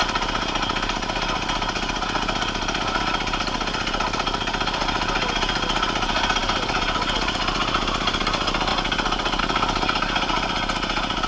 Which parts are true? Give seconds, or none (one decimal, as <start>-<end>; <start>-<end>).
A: 0.0-11.3